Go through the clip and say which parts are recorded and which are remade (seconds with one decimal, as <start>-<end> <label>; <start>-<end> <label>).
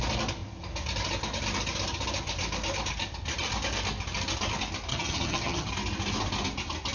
0.0-4.9 recorded; 4.9-5.7 remade; 5.7-6.9 recorded